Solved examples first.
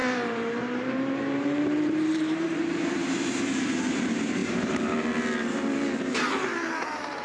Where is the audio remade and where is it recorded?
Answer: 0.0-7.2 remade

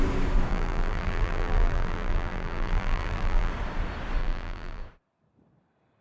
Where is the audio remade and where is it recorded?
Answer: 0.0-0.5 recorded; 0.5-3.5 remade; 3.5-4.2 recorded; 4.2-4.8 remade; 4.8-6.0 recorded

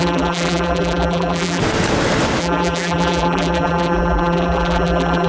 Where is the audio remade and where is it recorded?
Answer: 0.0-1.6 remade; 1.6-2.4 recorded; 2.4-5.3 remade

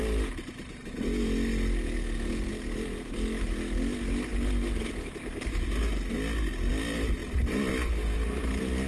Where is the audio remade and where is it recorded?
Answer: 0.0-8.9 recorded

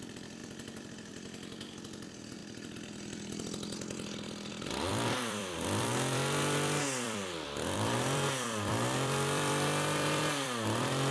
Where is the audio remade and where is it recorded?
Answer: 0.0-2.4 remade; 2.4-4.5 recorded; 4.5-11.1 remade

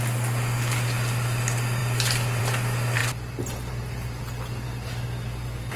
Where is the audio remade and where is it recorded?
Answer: 0.0-5.8 recorded